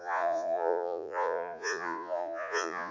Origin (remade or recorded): remade